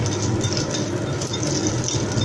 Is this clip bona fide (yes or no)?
yes